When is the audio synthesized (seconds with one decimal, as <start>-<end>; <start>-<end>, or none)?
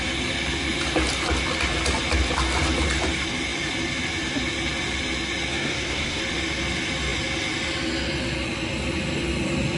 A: 5.5-6.2